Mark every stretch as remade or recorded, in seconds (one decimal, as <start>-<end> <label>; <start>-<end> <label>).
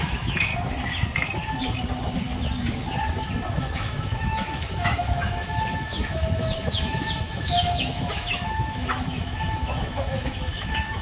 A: 0.0-0.5 remade; 0.5-3.6 recorded; 3.6-11.0 remade